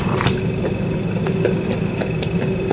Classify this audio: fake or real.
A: real